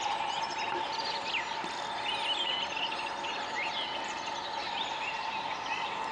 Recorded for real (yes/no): yes